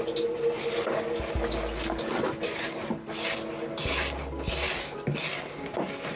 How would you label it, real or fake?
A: real